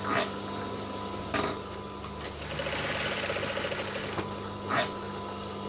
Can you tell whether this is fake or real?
real